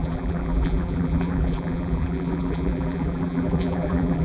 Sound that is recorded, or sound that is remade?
remade